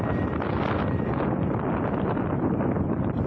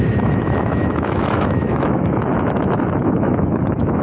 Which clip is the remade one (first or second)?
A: second